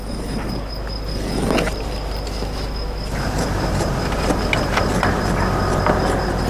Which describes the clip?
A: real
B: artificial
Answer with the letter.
A